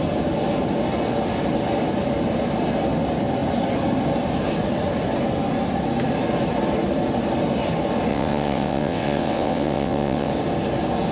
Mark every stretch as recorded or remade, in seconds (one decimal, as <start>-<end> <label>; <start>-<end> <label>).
0.0-8.1 recorded; 8.1-10.3 remade; 10.3-11.1 recorded